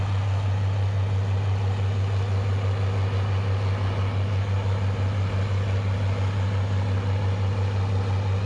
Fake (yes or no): no